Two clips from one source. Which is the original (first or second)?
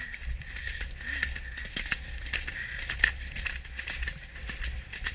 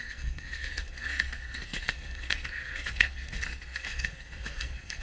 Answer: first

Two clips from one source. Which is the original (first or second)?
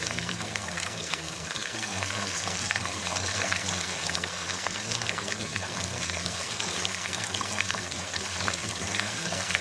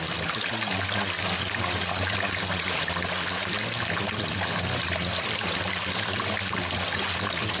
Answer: second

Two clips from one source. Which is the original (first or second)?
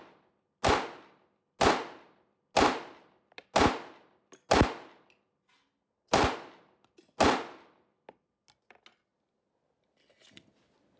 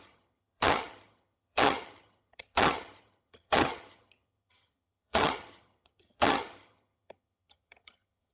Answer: first